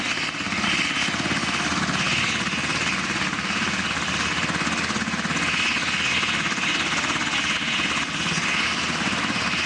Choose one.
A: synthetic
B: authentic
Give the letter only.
B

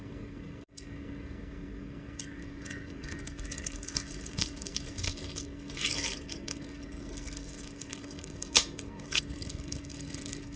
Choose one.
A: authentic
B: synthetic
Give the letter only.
B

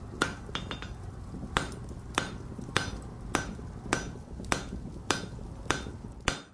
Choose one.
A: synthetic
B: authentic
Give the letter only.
B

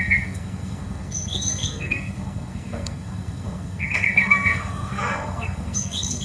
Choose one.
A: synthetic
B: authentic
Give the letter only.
A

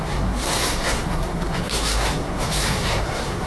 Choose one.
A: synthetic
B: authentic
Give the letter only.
A